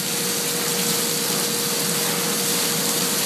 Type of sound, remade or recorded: recorded